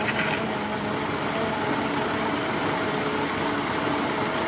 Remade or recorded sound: recorded